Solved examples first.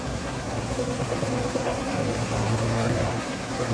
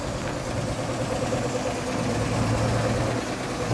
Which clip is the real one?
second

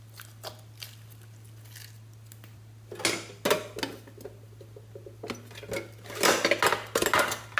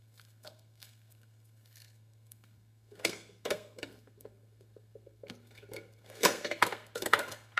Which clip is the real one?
first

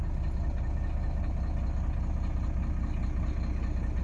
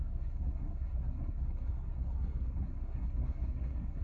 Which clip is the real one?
first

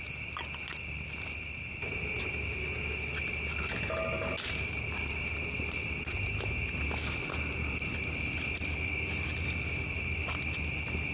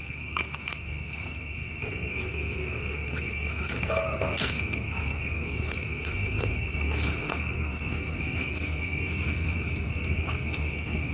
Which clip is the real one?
first